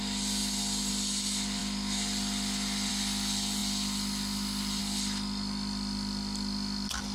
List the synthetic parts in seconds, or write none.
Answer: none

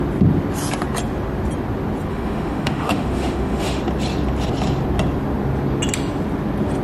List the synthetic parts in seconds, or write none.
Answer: 2.1-3.8

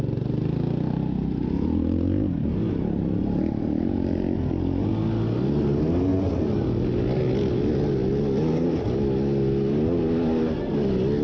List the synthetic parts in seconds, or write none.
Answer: none

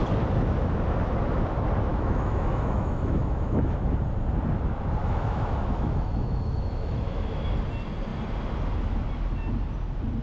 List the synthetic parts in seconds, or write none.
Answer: 1.9-4.0; 5.0-7.4